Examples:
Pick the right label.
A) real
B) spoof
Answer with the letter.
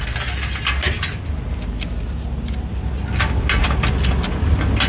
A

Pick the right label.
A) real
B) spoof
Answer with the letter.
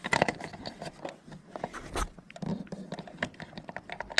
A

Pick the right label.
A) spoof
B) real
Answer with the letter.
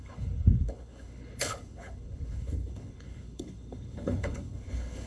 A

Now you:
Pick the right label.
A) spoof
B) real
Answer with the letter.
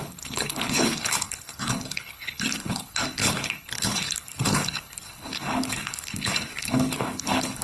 A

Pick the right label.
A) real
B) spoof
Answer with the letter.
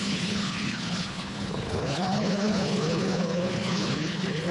B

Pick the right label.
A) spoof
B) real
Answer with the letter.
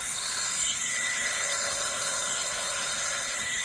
A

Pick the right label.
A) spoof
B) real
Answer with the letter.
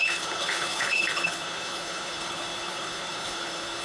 A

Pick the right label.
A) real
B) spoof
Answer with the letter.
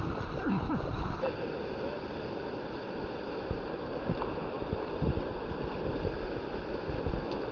A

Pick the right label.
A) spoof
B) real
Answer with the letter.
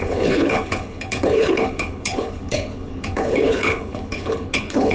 A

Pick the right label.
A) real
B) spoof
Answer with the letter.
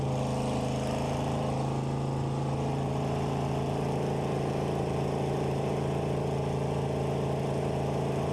A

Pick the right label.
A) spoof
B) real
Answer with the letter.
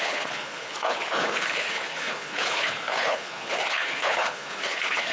A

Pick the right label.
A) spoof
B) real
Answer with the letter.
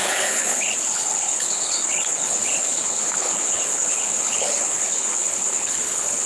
A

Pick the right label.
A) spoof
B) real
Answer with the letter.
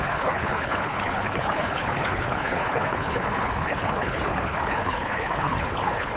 A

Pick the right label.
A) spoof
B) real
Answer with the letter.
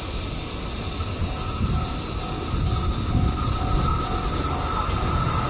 B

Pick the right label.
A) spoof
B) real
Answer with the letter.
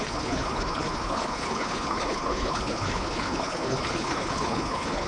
A